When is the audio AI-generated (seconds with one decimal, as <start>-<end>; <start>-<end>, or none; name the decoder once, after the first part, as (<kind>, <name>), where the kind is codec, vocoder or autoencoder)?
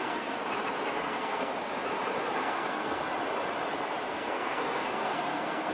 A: 0.0-0.4 (codec, SNAC); 0.9-1.5; 2.3-3.0; 4.1-5.7